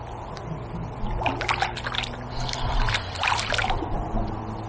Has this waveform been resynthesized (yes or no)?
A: no